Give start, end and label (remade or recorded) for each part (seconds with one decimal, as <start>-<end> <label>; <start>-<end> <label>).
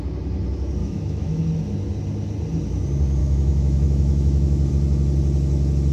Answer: 0.0-0.8 recorded; 0.8-1.4 remade; 1.4-3.2 recorded; 3.2-4.7 remade; 4.7-5.9 recorded